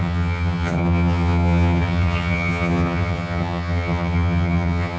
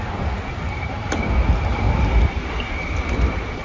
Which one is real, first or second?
second